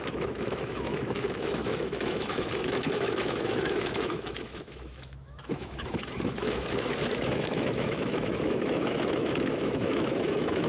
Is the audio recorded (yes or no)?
no